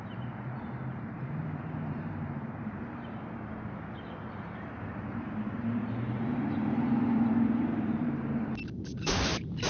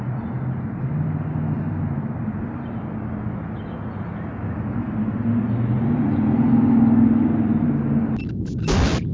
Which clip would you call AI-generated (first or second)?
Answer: first